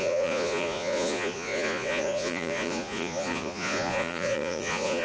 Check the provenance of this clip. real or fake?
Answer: fake